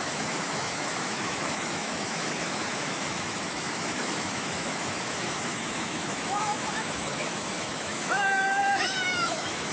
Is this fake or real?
fake